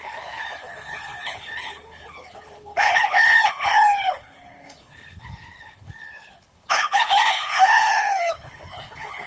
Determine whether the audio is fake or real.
fake